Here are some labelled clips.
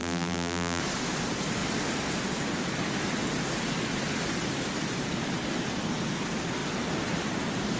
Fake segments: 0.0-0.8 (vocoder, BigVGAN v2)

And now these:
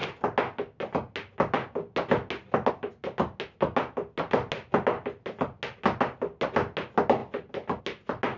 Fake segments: none

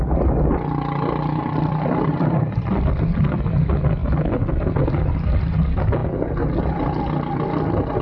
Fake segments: 1.4-2.7 (vocoder, BigVGAN v2); 4.0-5.4

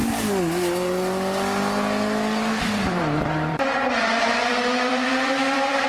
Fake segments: 2.5-5.9 (vocoder, BigVGAN v2)

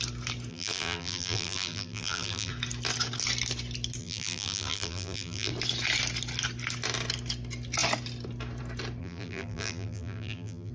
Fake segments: 0.5-2.5 (vocoder, BigVGAN v2); 4.0-5.5; 9.0-10.7

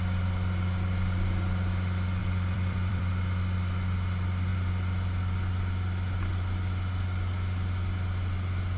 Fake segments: 2.2-3.1 (vocoder, BigVGAN v2)

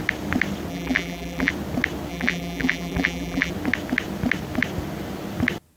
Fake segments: 0.7-1.5 (vocoder, BigVGAN v2); 2.1-3.5